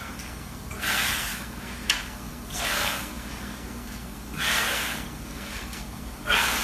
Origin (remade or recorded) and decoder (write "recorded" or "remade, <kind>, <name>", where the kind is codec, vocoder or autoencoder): remade, codec, SNAC